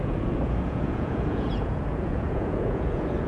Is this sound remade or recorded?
remade